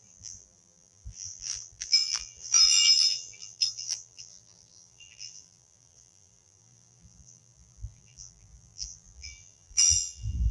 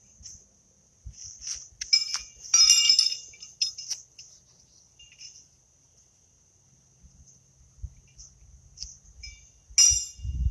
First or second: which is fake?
first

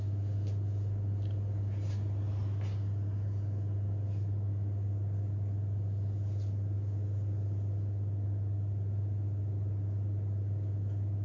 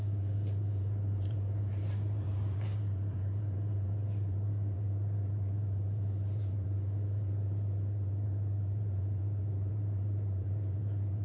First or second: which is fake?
second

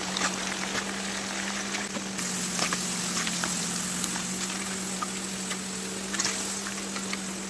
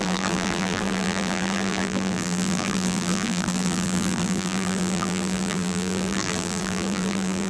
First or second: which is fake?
second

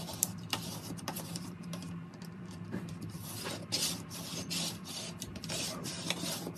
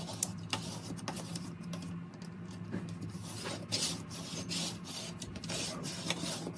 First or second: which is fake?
first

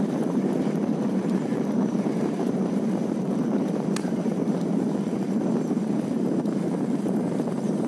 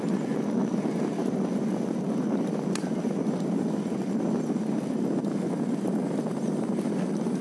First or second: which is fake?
first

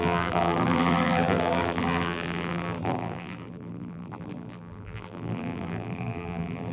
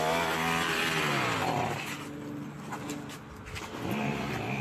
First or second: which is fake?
first